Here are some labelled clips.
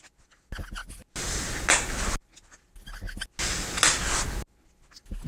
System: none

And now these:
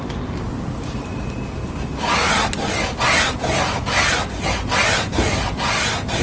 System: none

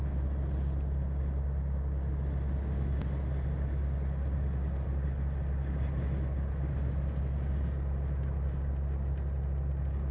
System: none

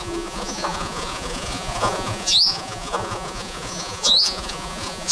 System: vocoder, Vocos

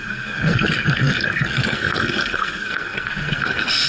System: codec, SNAC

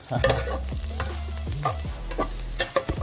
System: none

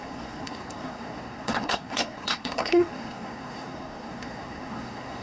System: codec, SNAC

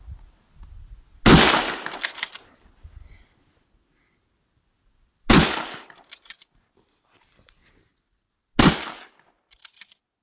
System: none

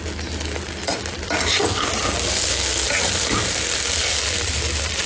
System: none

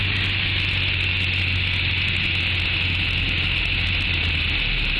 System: none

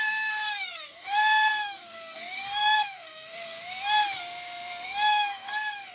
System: codec, SNAC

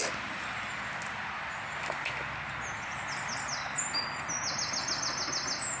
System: none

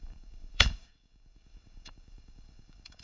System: codec, DAC